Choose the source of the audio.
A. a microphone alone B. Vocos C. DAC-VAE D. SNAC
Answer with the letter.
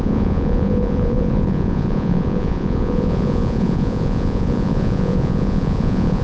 B